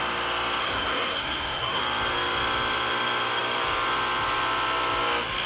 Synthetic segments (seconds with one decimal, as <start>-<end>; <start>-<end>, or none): 0.6-1.8